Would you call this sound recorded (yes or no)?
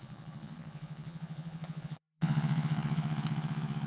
no